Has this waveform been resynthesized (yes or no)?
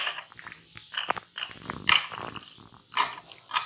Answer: yes